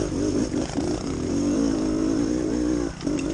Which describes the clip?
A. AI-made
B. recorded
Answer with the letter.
A